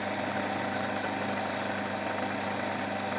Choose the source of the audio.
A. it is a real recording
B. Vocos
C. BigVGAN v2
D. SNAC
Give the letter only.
A